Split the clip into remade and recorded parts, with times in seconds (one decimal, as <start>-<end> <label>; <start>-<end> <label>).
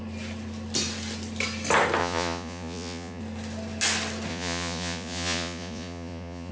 0.0-2.0 recorded; 2.0-3.2 remade; 3.2-4.3 recorded; 4.3-6.5 remade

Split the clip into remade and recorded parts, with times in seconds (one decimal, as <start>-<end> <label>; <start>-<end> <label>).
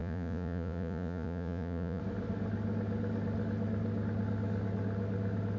0.0-2.0 remade; 2.0-5.6 recorded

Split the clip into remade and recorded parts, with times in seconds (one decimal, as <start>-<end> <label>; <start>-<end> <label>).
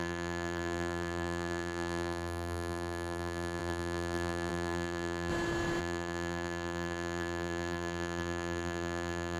0.0-5.3 remade; 5.3-5.8 recorded; 5.8-9.4 remade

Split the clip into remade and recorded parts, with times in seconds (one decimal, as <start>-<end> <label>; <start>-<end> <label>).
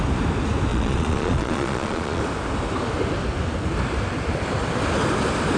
0.0-0.7 recorded; 0.7-2.2 remade; 2.2-5.6 recorded